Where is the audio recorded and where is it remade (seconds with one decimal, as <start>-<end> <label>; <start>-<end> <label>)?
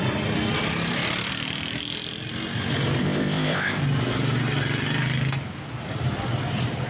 0.0-3.0 recorded; 3.0-3.8 remade; 3.8-6.9 recorded